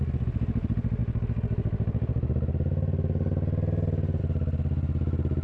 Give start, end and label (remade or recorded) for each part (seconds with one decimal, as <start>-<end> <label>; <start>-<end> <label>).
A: 0.0-5.4 recorded